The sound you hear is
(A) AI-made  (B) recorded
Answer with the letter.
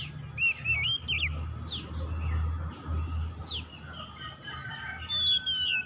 B